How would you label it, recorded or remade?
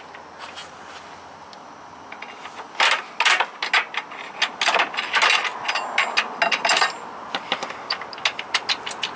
recorded